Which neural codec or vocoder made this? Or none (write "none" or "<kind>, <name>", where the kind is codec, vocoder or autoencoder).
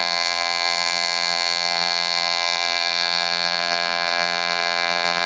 vocoder, BigVGAN v2